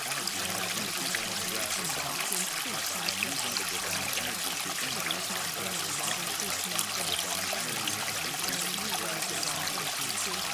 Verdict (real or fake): real